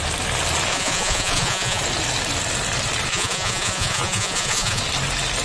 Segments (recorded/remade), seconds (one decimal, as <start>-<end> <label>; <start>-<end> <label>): 0.0-0.7 recorded; 0.7-1.8 remade; 1.8-3.1 recorded; 3.1-4.8 remade; 4.8-5.4 recorded